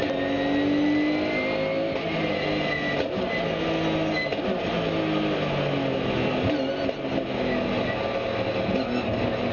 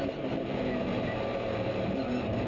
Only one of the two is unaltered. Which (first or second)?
first